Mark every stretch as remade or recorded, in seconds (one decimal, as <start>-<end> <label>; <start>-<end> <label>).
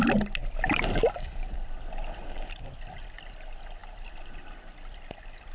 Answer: 0.0-5.5 recorded